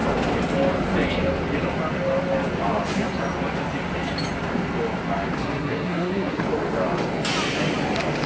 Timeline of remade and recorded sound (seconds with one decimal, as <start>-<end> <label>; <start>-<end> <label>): 0.0-5.4 recorded; 5.4-6.4 remade; 6.4-8.3 recorded